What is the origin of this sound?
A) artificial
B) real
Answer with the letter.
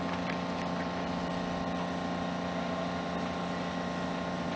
B